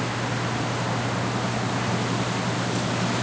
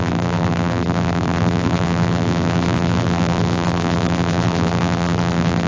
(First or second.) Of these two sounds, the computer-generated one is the second